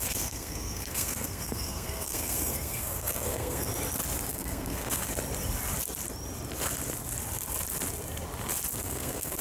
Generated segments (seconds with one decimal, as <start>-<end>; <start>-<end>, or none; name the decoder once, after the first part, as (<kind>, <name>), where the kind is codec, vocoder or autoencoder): 0.0-3.7 (codec, SNAC); 4.3-5.1; 8.8-9.4